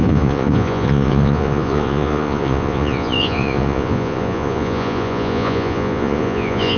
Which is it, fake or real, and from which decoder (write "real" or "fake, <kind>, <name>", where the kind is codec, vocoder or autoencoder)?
fake, vocoder, Vocos